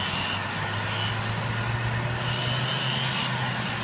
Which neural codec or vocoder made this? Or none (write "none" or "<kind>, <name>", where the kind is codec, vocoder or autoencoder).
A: none